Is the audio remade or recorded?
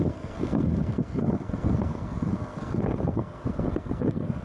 remade